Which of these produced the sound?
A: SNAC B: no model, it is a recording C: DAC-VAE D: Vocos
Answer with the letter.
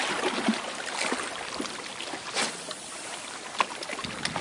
B